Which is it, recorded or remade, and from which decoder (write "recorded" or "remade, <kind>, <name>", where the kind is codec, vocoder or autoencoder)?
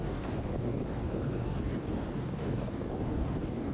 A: remade, codec, DAC